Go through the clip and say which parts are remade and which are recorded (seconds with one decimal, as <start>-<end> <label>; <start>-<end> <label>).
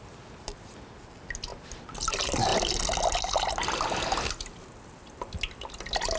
0.0-6.2 recorded